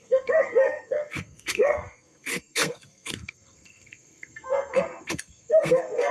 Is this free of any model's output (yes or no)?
no